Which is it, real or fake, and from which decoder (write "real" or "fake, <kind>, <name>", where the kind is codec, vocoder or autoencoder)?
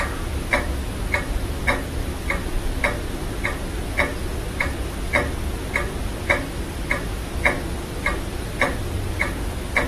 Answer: real